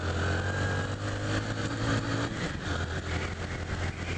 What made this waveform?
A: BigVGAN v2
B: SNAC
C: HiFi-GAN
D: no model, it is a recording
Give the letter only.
D